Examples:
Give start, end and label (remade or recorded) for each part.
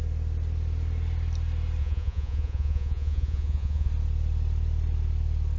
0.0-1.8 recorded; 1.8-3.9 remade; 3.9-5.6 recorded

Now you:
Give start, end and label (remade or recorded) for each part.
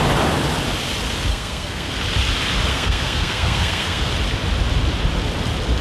0.0-1.3 recorded; 1.3-1.9 remade; 1.9-2.7 recorded; 2.7-4.1 remade; 4.1-5.8 recorded